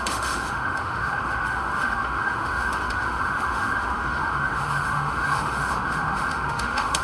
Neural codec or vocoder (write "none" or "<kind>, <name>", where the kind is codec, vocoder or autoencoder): autoencoder, DAC-VAE